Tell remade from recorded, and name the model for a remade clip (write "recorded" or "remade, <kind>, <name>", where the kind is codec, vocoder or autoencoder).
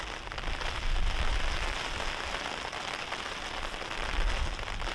recorded